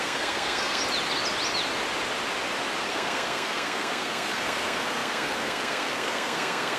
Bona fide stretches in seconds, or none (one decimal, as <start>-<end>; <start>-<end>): 0.8-2.8